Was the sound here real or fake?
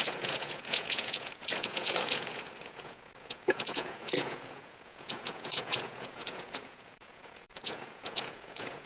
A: fake